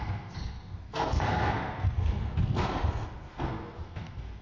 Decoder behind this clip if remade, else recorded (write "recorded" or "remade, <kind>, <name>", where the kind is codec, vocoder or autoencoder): remade, codec, SNAC